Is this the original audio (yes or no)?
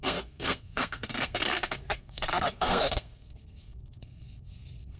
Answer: no